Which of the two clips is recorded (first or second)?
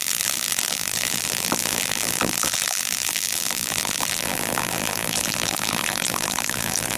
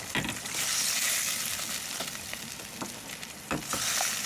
second